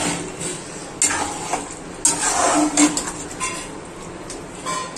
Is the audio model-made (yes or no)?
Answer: no